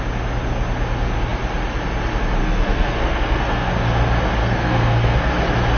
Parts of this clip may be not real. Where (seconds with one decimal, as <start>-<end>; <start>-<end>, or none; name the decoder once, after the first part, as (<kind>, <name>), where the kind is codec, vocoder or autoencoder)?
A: 2.4-3.7 (codec, SNAC); 4.4-5.3

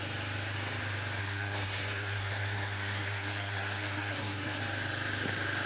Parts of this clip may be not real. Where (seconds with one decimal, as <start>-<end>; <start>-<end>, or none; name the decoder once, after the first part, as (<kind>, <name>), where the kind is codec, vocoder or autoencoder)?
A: 1.2-4.6 (codec, SNAC)

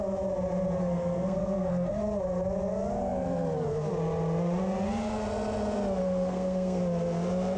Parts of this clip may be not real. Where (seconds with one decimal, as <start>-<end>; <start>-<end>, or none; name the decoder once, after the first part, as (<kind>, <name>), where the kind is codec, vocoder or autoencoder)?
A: 0.8-2.0 (codec, SNAC); 6.0-6.8